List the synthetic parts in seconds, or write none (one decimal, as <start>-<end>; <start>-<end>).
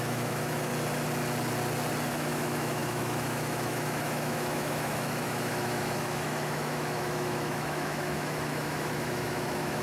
0.0-0.7; 2.1-9.8